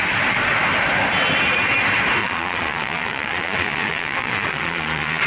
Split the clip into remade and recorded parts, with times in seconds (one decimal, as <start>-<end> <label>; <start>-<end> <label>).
0.0-2.2 recorded; 2.2-5.3 remade